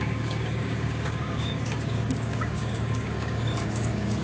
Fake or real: fake